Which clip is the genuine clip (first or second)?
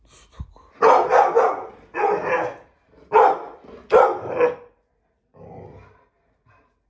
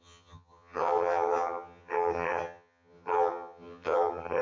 first